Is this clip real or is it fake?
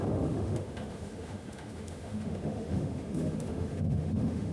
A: fake